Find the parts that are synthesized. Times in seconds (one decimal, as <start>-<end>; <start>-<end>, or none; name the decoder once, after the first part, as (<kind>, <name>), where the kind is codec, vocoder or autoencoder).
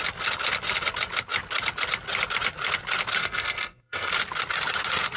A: 3.2-4.1 (codec, SNAC)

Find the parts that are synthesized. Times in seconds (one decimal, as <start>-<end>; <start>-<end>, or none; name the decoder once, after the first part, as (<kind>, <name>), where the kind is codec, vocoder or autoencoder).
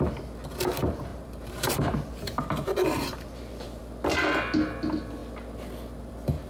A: 1.1-3.8 (vocoder, BigVGAN v2)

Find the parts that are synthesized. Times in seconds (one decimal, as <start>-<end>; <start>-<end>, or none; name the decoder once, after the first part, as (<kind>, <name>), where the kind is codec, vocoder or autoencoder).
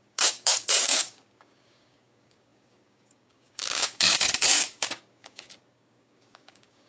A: 0.0-6.9 (codec, DAC)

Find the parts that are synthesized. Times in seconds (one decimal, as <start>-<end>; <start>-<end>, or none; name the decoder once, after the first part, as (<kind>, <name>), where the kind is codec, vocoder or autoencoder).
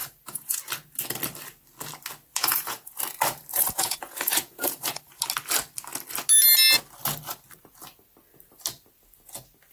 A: 0.0-0.6 (vocoder, Vocos); 2.3-3.0; 3.5-5.1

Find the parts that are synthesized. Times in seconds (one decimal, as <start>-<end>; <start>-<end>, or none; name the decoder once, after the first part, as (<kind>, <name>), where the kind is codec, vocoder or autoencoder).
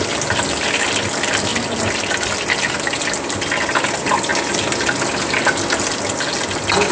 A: none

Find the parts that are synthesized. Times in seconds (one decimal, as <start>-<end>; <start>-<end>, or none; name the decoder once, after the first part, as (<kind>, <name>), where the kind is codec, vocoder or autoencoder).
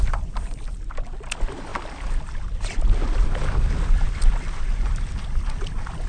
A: none